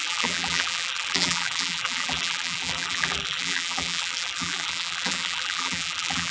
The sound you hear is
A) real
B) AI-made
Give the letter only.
B